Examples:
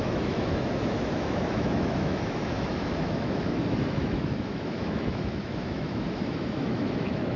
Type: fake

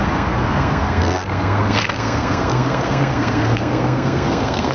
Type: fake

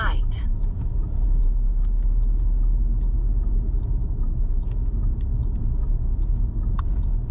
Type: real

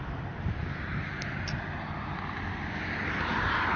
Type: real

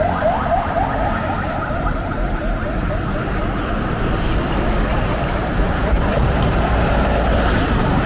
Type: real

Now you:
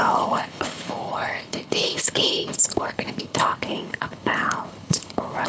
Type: fake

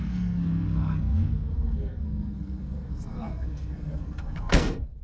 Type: fake